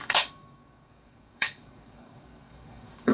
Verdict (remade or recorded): remade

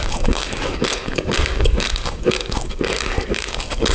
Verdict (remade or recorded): remade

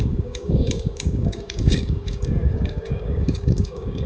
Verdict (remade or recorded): remade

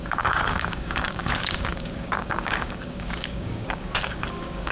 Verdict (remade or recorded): remade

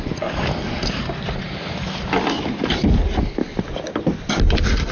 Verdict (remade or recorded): recorded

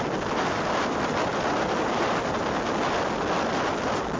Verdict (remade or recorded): recorded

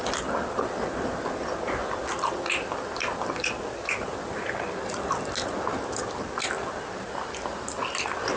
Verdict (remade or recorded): recorded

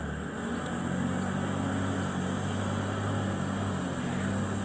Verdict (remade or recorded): recorded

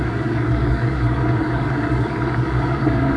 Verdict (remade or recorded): remade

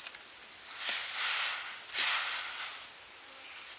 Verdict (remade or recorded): recorded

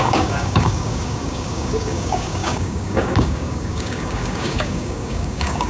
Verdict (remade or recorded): remade